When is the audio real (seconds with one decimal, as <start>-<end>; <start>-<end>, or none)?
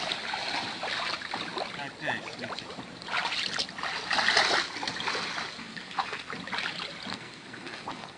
0.0-5.6; 6.3-7.1